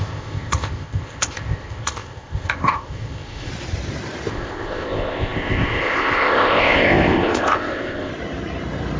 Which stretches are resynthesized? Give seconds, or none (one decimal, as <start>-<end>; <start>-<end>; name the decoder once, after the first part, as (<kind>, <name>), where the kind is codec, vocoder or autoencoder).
0.0-3.5 (codec, ZipCodec); 4.3-8.1

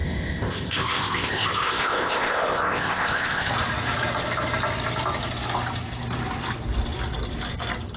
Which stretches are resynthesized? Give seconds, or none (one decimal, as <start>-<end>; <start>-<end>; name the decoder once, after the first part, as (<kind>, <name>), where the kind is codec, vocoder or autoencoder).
0.0-3.5 (codec, ZipCodec)